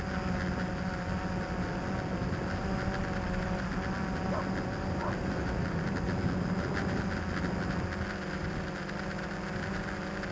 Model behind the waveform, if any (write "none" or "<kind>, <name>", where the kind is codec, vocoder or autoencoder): none